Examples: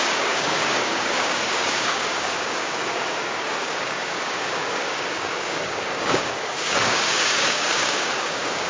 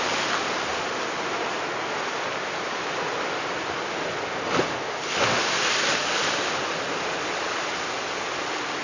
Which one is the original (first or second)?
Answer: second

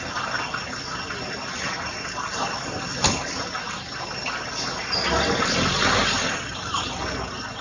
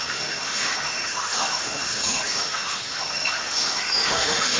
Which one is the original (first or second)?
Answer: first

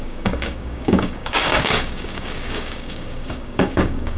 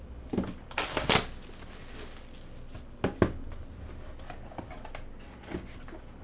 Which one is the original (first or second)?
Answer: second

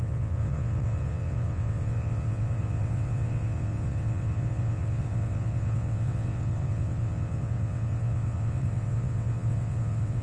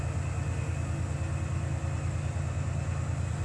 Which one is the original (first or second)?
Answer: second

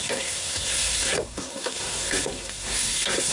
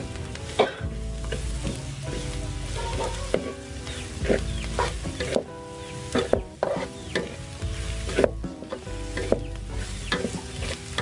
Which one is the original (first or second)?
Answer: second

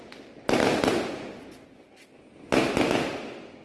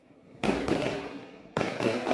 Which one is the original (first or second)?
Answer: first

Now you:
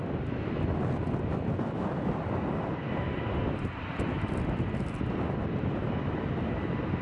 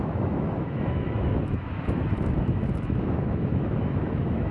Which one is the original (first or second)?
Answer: first